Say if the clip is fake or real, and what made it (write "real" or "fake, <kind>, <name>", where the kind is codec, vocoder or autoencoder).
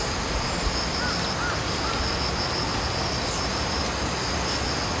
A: real